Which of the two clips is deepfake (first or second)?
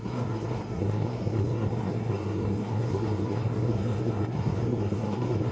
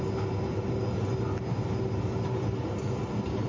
first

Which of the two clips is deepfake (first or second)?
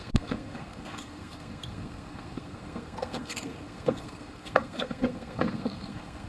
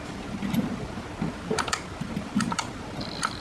first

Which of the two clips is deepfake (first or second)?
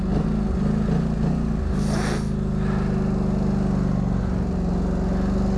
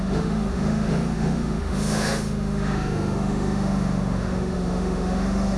second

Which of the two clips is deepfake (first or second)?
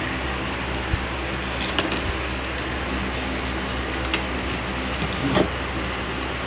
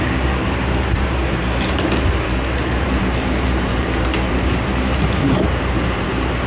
second